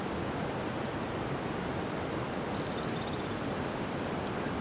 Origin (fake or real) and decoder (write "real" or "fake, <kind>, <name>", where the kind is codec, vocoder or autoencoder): real